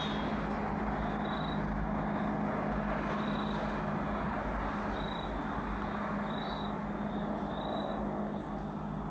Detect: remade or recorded recorded